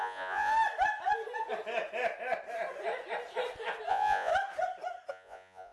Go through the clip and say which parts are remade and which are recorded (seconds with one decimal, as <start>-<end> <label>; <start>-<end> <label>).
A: 0.0-0.5 remade; 0.5-3.9 recorded; 3.9-4.3 remade; 4.3-5.1 recorded; 5.1-5.7 remade